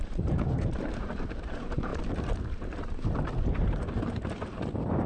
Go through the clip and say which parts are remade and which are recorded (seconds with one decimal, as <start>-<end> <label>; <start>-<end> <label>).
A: 0.0-1.9 remade; 1.9-5.1 recorded